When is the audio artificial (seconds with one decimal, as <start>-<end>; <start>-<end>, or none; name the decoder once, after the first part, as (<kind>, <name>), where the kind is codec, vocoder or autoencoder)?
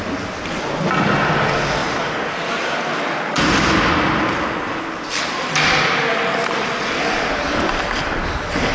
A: none